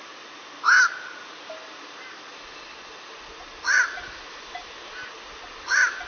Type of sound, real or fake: real